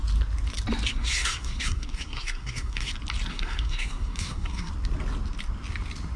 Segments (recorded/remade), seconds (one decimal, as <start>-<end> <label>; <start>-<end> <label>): 0.0-0.9 recorded; 0.9-2.9 remade; 2.9-3.3 recorded; 3.3-4.7 remade; 4.7-6.2 recorded